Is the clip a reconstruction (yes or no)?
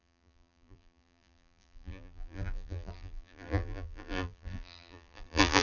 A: yes